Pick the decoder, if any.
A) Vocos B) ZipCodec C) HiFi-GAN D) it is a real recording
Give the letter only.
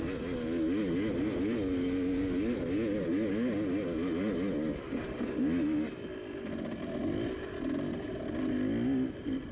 D